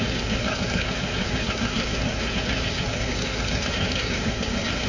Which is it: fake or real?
fake